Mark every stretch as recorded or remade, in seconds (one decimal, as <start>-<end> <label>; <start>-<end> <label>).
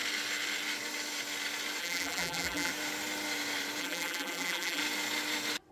0.0-1.8 recorded; 1.8-2.7 remade; 2.7-3.8 recorded; 3.8-4.8 remade; 4.8-5.7 recorded